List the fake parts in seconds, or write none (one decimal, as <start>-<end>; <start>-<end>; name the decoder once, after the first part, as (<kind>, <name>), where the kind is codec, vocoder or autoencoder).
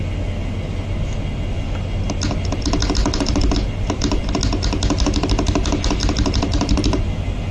3.0-4.2 (vocoder, BigVGAN v2); 6.0-7.0